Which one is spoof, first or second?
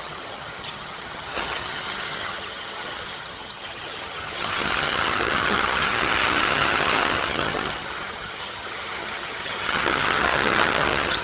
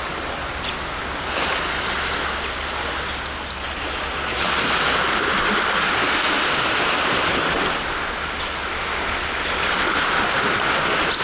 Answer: first